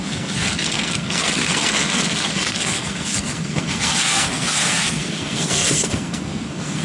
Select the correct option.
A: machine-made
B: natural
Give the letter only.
A